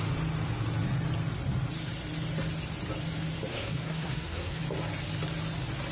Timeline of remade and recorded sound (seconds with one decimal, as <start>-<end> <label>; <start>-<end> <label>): 0.0-3.5 recorded; 3.5-4.6 remade; 4.6-5.9 recorded